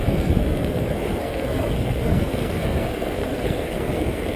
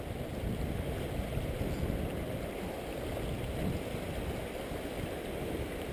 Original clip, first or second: second